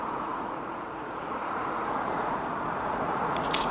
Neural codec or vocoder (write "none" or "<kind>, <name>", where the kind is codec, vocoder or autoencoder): vocoder, Vocos